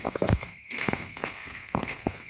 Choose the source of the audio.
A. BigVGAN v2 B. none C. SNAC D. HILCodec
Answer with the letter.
C